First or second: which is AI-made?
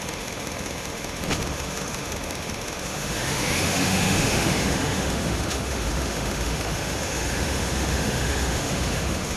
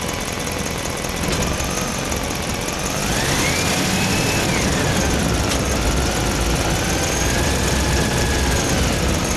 first